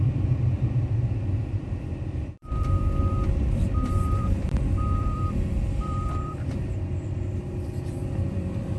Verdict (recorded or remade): remade